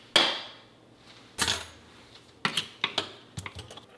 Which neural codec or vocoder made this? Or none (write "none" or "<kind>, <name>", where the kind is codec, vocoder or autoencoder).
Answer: none